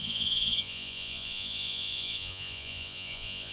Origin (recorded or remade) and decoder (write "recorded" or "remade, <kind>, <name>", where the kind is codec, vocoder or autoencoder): remade, vocoder, Vocos